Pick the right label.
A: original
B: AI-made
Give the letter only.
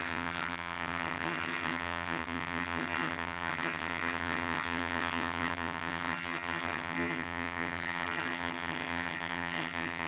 B